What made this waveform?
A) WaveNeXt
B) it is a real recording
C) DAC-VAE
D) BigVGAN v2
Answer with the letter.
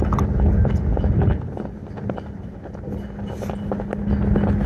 B